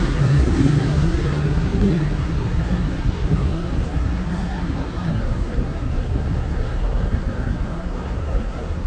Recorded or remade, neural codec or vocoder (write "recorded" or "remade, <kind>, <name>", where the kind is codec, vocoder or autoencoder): remade, codec, SNAC